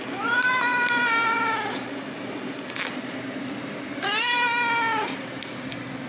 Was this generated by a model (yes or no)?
no